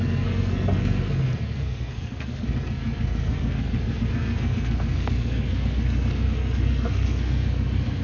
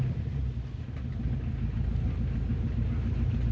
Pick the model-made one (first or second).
first